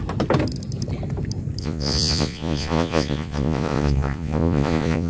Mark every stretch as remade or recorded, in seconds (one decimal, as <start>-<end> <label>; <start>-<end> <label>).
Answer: 0.0-1.6 recorded; 1.6-5.1 remade